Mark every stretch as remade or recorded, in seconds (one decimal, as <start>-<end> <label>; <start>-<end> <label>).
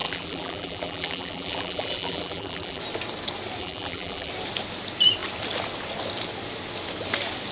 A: 0.0-2.8 remade; 2.8-3.6 recorded; 3.6-4.3 remade; 4.3-7.5 recorded